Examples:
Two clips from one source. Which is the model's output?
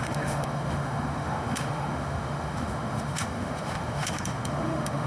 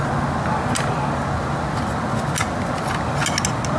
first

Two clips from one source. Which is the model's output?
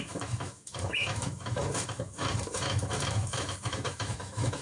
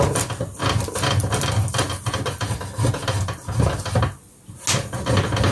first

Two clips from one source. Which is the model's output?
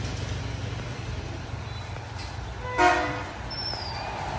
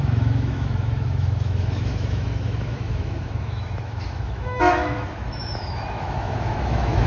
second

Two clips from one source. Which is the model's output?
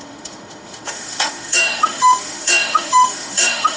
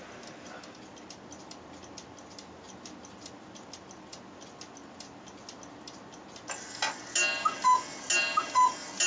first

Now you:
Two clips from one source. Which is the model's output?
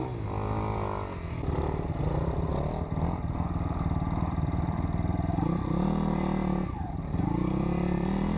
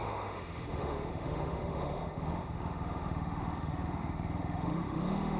second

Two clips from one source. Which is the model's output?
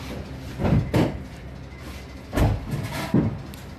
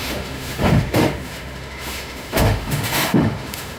second